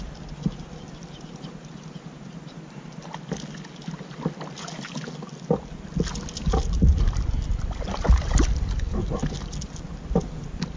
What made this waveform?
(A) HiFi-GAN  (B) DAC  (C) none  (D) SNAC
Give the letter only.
C